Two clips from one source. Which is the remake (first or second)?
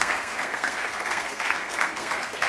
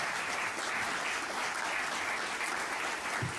first